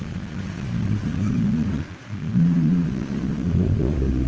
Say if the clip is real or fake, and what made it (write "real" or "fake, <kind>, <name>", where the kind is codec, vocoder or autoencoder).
fake, vocoder, Vocos